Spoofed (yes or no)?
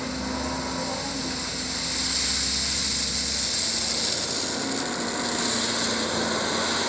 no